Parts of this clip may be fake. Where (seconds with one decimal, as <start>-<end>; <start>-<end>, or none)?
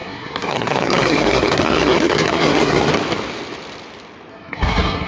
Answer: 0.0-2.9; 4.3-5.1